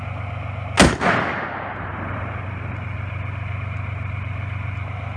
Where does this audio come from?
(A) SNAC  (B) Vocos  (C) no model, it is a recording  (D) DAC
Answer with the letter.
C